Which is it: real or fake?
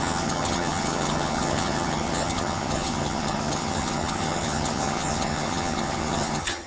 fake